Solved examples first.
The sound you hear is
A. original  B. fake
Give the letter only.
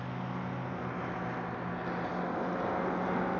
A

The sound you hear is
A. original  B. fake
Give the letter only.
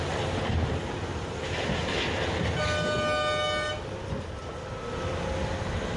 A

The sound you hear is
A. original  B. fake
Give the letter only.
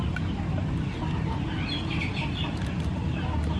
A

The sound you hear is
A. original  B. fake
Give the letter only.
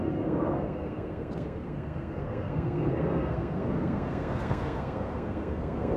B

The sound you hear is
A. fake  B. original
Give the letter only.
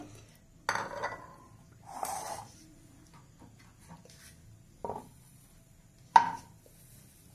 B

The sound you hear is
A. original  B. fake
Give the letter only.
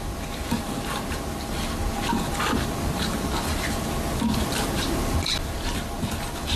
A